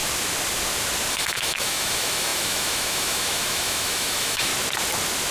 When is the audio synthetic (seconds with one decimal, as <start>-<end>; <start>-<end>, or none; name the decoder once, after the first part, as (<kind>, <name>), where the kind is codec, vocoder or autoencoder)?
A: 1.1-4.5 (autoencoder, DAC-VAE)